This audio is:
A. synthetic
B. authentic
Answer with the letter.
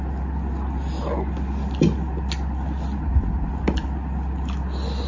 B